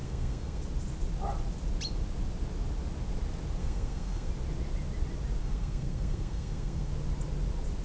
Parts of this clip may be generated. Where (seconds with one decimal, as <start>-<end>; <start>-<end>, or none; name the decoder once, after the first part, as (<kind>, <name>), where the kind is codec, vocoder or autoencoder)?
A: 0.0-0.6 (codec, SNAC); 3.6-4.3; 5.4-6.9